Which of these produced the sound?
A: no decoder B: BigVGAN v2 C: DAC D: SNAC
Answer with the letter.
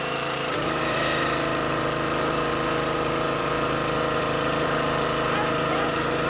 B